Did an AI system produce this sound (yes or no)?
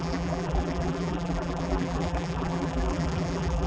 yes